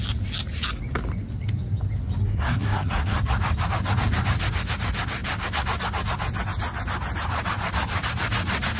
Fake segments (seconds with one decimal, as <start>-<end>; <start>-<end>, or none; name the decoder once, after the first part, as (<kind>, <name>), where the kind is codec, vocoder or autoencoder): 2.2-3.2 (codec, SNAC)